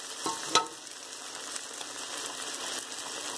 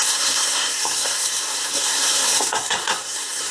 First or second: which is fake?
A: second